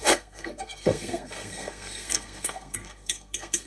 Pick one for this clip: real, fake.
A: fake